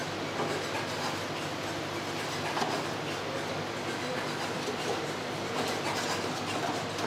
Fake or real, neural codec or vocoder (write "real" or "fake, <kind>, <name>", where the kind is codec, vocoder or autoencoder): real